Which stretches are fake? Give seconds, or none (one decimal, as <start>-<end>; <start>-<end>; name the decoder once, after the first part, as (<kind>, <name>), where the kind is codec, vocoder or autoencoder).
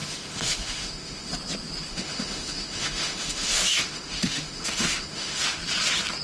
0.0-1.3 (autoencoder, DAC-VAE); 1.9-5.6